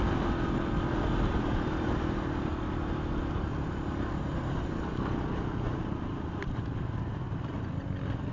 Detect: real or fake real